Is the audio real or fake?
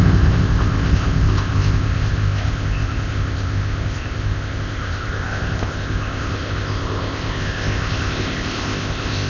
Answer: fake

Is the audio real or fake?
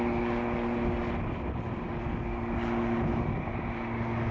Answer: real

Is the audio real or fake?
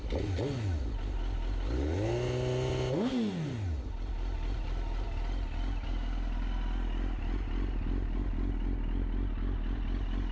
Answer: real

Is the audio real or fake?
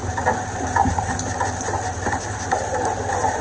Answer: real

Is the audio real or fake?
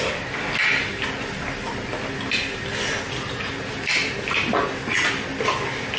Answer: real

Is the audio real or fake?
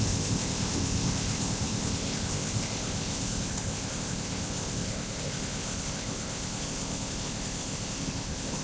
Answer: fake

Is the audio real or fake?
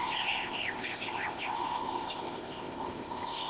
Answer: fake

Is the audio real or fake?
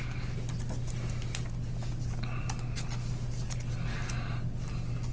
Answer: real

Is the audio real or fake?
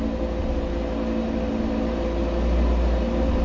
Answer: real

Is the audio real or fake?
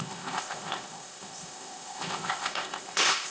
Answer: fake